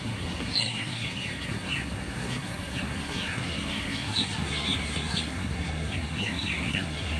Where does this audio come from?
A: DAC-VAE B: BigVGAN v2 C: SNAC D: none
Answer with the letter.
C